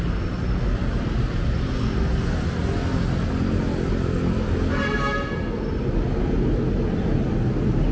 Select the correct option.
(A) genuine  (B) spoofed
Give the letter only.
A